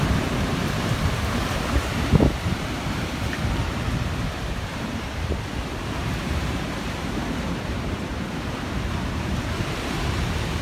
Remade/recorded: remade